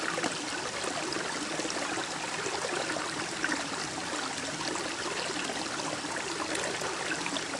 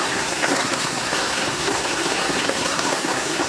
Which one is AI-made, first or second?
second